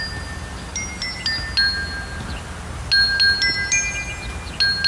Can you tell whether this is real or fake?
real